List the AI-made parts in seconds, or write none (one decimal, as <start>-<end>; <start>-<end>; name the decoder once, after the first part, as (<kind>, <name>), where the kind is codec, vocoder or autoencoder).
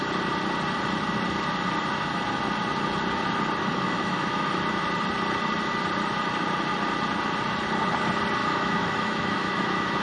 3.6-4.5 (autoencoder, DAC-VAE); 8.4-10.0